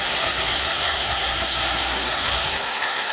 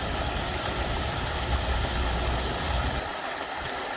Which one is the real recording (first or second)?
second